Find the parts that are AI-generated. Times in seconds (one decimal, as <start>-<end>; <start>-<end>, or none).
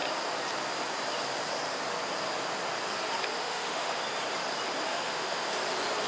3.3-4.0; 4.9-5.5